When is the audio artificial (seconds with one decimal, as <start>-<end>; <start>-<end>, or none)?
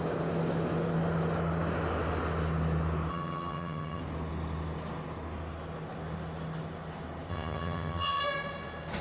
3.1-4.0; 7.3-8.2